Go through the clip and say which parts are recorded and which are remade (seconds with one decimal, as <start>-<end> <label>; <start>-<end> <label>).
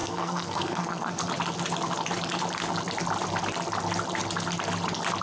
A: 0.0-1.2 remade; 1.2-5.2 recorded